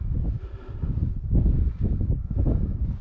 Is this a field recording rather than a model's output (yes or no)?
yes